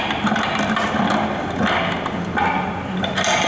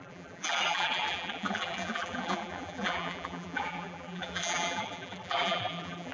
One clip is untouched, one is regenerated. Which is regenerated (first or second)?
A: second